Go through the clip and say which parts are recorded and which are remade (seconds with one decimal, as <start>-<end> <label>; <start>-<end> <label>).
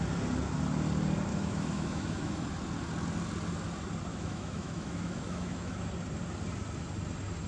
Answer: 0.0-1.3 recorded; 1.3-2.5 remade; 2.5-4.1 recorded; 4.1-5.9 remade; 5.9-7.5 recorded